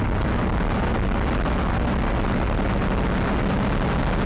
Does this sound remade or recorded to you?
recorded